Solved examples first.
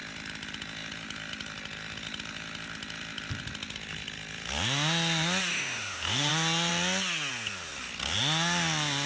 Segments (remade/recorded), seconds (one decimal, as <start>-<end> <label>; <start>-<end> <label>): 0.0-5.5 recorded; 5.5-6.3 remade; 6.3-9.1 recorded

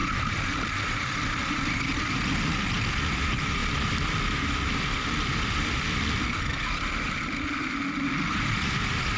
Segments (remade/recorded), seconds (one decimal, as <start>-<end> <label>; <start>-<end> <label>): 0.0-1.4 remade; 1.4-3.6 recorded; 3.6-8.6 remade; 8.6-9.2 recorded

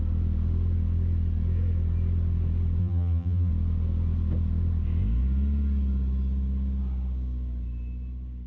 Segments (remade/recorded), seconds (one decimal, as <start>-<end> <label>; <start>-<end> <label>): 0.0-2.8 recorded; 2.8-3.5 remade; 3.5-8.5 recorded

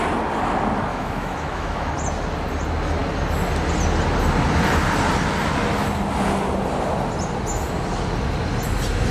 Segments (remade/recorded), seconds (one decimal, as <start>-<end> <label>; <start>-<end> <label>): 0.0-0.9 recorded; 0.9-1.9 remade; 1.9-9.1 recorded